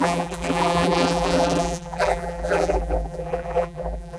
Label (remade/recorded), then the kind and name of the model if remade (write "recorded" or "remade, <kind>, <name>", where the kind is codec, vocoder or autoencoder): remade, vocoder, BigVGAN v2